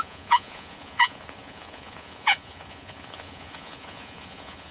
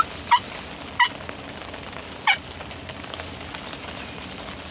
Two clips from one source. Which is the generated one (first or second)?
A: first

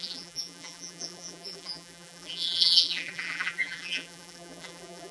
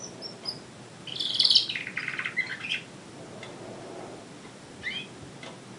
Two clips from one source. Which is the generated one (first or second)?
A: first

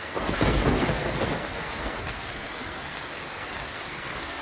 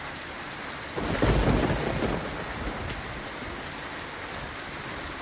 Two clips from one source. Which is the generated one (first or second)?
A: first